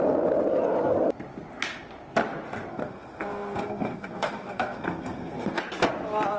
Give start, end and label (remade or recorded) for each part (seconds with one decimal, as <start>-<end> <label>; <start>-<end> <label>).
0.0-2.7 recorded; 2.7-5.6 remade; 5.6-6.4 recorded